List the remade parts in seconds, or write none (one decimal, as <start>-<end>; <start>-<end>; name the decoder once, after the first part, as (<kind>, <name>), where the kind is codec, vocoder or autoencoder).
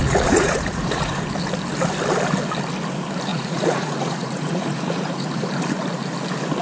0.0-1.1 (vocoder, Vocos); 3.3-5.4